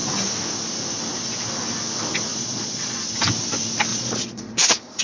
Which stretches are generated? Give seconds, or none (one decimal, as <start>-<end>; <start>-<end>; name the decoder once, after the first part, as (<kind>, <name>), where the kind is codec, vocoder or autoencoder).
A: 2.3-3.0 (vocoder, Vocos); 3.9-5.0